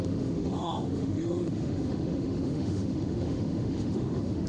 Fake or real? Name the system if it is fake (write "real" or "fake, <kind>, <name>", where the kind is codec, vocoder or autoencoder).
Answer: fake, autoencoder, DAC-VAE